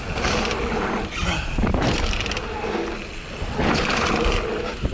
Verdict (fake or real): real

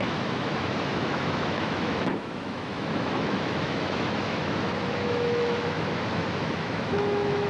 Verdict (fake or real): fake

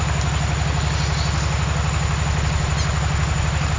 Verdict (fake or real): real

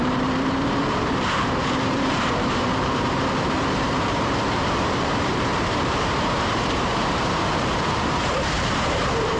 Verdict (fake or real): fake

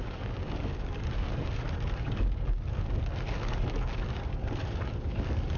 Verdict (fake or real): fake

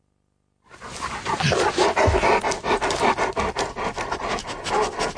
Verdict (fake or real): real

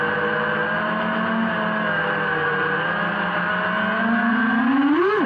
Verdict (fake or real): real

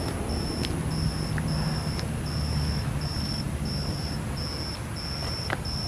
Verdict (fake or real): real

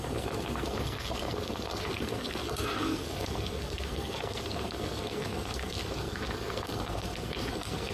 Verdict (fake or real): fake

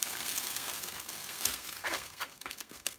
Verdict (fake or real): fake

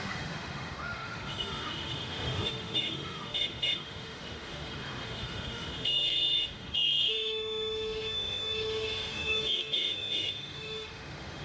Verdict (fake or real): fake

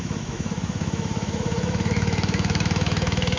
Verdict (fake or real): fake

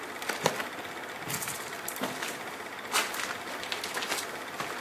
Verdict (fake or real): real